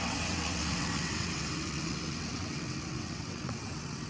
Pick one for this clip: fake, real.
fake